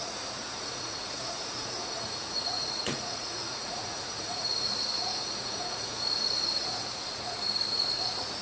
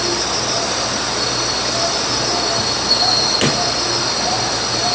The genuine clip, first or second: second